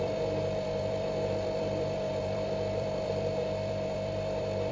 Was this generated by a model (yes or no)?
yes